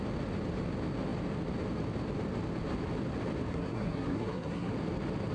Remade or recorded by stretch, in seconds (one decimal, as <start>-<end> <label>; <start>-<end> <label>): 0.0-3.5 recorded; 3.5-4.7 remade; 4.7-5.3 recorded